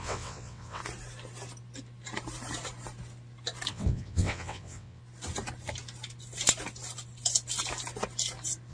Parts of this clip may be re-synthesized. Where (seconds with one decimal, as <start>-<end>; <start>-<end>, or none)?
0.0-0.8; 3.7-5.0